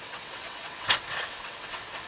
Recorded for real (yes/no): no